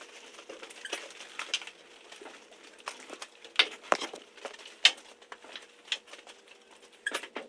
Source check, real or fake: real